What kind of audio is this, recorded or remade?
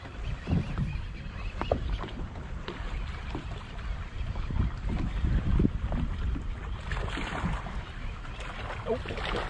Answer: recorded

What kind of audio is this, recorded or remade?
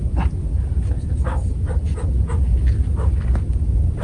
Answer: recorded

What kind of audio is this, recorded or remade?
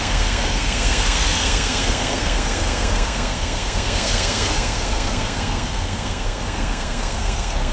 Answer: remade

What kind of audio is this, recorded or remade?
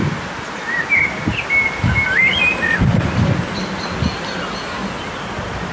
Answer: recorded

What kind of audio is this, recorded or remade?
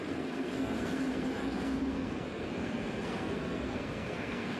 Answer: remade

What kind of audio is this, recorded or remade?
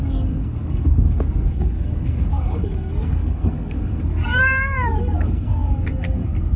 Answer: remade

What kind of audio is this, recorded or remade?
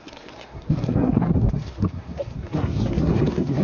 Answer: remade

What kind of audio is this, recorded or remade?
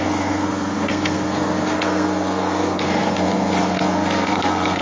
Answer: remade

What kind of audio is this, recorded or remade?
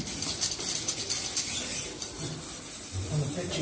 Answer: recorded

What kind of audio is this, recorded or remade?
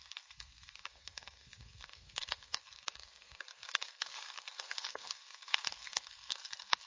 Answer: remade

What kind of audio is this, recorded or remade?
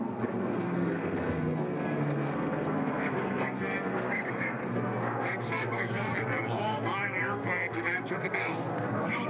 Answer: remade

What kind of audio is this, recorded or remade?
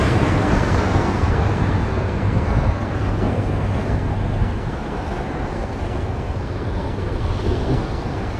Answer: remade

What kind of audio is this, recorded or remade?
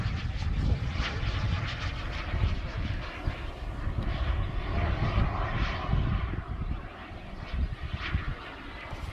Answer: recorded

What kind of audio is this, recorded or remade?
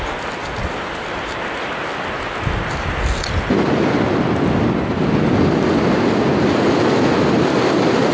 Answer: recorded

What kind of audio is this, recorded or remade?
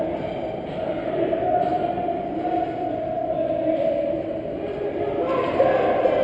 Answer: recorded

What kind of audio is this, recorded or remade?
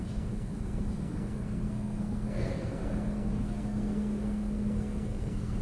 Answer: remade